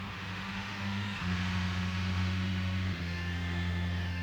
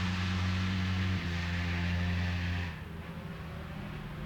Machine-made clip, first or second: first